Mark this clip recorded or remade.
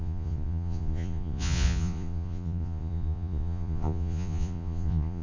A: remade